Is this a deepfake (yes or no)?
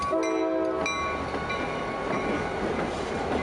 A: no